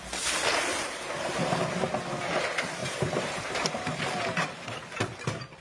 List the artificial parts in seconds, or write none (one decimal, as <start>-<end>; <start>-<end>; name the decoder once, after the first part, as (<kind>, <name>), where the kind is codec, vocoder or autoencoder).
0.7-1.5 (vocoder, BigVGAN v2); 2.8-4.0